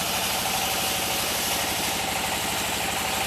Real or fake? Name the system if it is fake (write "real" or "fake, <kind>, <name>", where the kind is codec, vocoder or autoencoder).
real